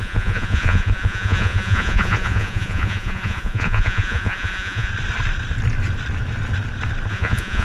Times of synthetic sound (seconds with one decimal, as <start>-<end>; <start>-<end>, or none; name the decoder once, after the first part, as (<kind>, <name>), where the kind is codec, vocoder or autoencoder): 0.0-4.9 (vocoder, Vocos); 7.1-7.6